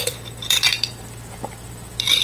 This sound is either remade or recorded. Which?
remade